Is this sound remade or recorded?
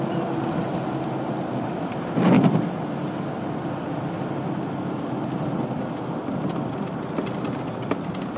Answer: recorded